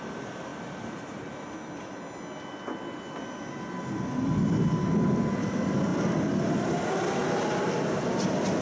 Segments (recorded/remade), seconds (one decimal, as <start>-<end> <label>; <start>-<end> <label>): 0.0-8.6 recorded